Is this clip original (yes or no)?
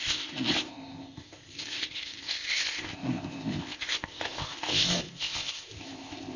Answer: no